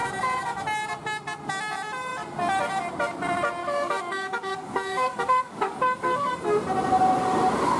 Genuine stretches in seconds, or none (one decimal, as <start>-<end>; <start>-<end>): 0.0-3.6; 6.3-7.8